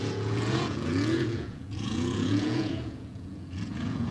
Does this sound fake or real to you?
fake